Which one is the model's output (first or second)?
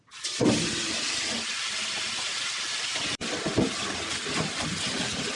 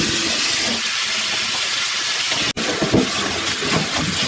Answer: first